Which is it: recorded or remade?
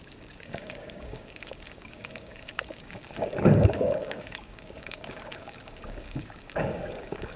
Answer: remade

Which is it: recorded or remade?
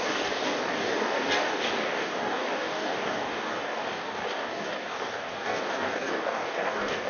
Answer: remade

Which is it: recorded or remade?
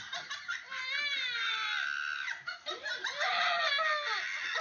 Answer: recorded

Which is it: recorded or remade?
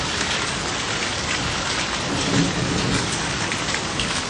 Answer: remade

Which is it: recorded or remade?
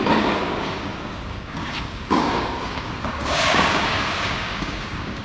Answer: remade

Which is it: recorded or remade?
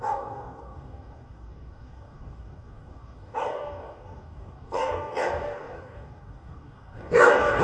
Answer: remade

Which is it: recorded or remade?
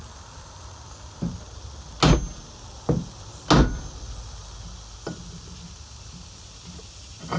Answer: recorded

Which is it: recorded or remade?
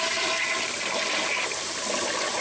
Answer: recorded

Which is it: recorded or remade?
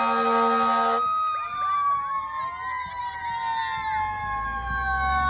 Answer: recorded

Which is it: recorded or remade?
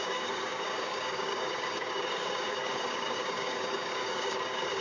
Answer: remade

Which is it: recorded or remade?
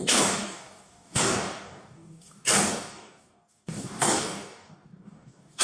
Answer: remade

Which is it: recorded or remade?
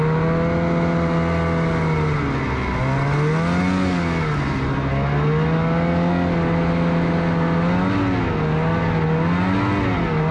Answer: recorded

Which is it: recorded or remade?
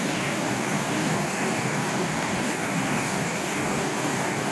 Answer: remade